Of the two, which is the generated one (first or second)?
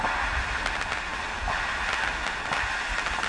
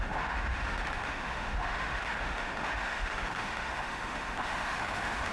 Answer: second